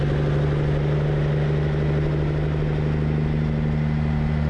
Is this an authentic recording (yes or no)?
yes